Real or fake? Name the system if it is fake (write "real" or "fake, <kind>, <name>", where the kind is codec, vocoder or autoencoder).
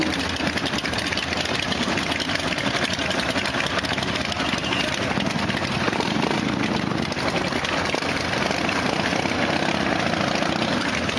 real